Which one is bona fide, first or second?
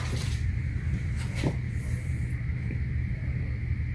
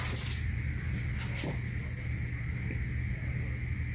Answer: second